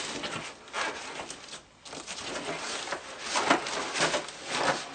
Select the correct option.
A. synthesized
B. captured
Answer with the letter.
B